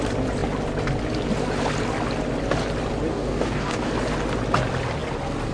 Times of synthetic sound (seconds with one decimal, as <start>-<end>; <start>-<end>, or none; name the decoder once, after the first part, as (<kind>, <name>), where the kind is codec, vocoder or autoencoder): 3.1-3.9 (codec, DAC)

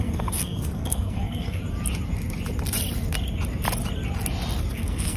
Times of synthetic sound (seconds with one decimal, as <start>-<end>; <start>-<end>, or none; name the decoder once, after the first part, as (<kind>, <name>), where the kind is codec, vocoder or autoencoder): 0.0-1.6 (codec, SNAC); 4.7-5.2